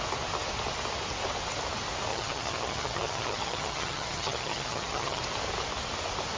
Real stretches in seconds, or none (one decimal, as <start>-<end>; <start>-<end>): 0.0-2.1; 5.2-6.4